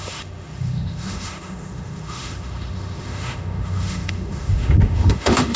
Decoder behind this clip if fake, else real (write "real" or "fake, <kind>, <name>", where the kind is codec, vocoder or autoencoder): fake, autoencoder, DAC-VAE